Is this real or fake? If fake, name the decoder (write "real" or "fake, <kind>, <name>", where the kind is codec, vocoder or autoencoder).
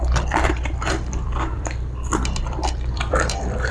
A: fake, vocoder, BigVGAN v2